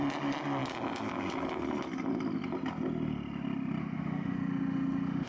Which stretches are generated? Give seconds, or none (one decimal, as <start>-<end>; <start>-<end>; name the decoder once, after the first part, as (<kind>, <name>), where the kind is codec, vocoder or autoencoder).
3.8-5.3 (autoencoder, DAC-VAE)